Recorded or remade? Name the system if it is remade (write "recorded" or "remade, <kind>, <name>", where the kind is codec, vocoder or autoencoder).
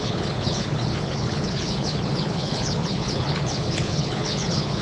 remade, codec, HILCodec